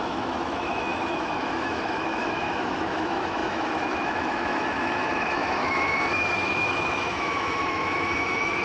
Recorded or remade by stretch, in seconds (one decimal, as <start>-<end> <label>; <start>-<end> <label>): 0.0-8.6 remade